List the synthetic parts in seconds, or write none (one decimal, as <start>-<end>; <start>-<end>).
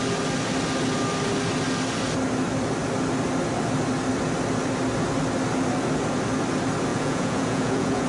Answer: 6.9-8.1